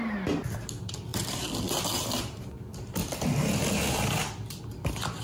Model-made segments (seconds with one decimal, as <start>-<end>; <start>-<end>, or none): 1.1-1.6